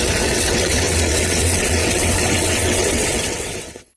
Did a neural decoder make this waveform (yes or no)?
yes